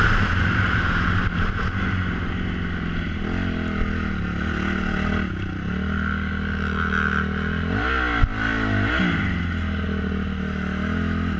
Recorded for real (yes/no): yes